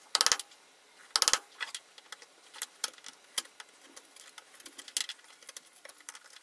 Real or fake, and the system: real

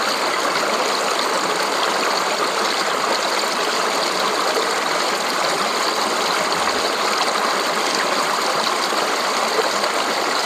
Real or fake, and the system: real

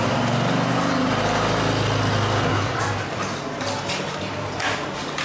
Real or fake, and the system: real